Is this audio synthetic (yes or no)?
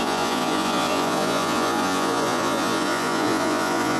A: yes